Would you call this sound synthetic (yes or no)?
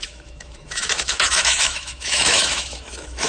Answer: yes